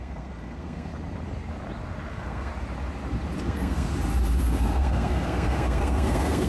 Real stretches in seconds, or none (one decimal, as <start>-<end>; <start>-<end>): 0.9-2.1; 2.5-3.4; 3.9-4.4